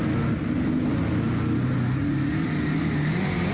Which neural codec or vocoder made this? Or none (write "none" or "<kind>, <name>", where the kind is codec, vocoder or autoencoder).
none